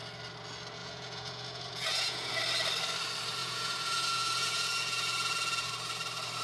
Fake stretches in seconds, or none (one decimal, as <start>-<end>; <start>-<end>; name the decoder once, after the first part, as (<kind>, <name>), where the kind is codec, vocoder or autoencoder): 0.8-2.3 (vocoder, Vocos); 3.4-5.7